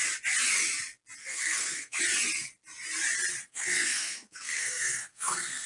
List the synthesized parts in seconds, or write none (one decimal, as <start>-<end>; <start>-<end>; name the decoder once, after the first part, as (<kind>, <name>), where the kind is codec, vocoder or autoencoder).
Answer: 1.2-2.0 (codec, SNAC); 3.5-5.7